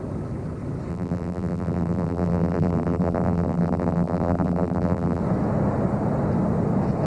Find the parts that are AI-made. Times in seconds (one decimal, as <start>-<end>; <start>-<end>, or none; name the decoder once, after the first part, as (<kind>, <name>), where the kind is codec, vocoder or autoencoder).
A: 0.9-5.2 (vocoder, BigVGAN v2)